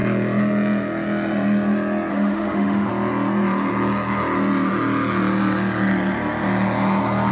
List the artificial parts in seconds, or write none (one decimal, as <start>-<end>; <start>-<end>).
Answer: 2.1-2.9